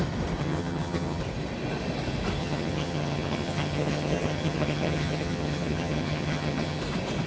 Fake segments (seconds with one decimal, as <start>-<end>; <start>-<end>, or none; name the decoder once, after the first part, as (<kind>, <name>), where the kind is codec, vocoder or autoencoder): 0.4-1.2 (vocoder, HiFi-GAN); 2.4-6.8